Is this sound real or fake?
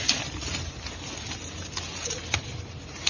real